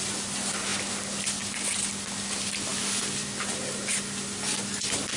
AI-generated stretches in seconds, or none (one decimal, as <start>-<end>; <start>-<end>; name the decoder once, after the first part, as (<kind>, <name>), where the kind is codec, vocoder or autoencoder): none